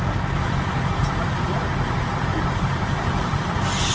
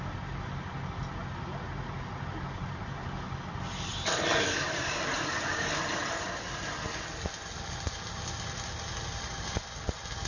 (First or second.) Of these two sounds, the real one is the second